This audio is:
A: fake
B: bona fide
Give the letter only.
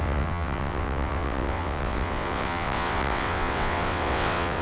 A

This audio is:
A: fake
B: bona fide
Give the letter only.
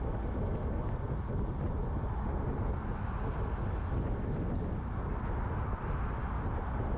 B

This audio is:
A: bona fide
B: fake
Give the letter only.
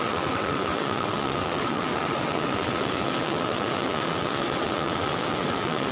B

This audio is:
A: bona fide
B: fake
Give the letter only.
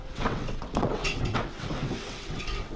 B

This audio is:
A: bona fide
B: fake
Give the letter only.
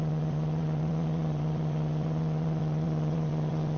B